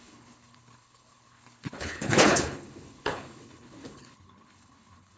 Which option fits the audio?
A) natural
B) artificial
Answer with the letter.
B